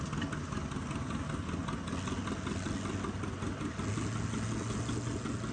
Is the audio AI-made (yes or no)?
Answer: no